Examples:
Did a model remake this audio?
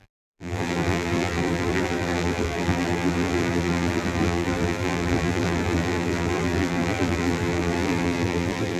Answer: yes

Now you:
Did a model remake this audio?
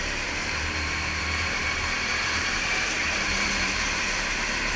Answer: yes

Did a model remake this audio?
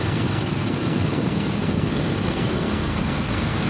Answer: yes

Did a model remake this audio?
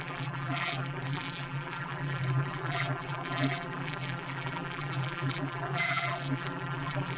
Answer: yes